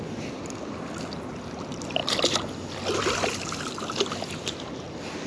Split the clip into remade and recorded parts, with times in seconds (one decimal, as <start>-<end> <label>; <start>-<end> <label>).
0.0-5.3 recorded